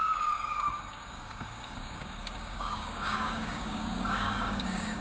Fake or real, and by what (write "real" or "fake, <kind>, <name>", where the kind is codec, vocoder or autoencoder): fake, codec, DAC